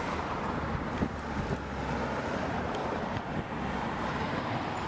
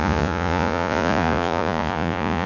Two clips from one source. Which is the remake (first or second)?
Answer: second